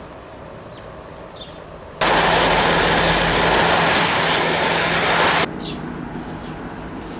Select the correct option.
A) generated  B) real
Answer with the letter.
B